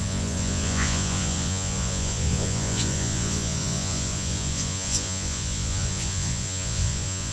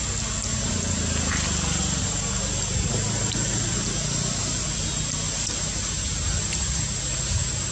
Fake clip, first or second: first